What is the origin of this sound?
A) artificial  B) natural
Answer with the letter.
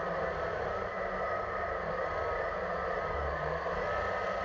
B